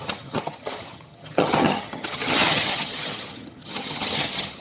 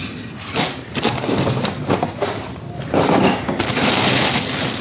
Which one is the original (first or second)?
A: second